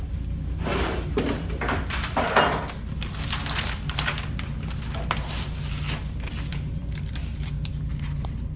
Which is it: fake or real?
real